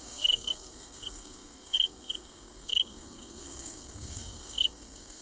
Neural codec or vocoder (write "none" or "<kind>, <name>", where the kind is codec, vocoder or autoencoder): codec, SNAC